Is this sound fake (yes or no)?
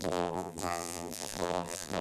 yes